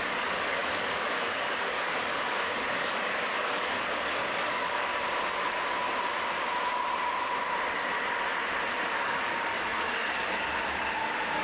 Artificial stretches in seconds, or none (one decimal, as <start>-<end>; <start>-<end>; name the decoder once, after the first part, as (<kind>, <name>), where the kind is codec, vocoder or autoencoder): 0.0-4.9 (codec, DAC); 9.0-11.4